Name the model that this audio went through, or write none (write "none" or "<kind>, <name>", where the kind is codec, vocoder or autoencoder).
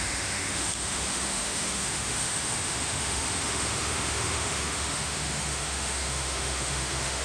autoencoder, DAC-VAE